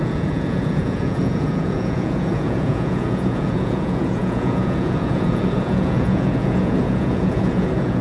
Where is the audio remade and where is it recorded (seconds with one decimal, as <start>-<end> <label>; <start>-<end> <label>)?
0.0-8.0 remade